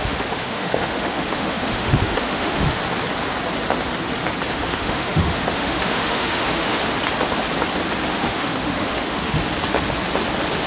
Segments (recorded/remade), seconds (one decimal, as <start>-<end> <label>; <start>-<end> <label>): 0.0-2.8 remade; 2.8-4.5 recorded; 4.5-6.8 remade; 6.8-8.1 recorded; 8.1-9.4 remade; 9.4-10.7 recorded